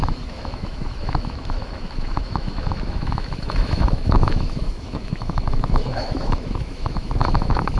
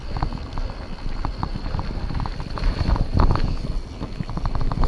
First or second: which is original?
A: second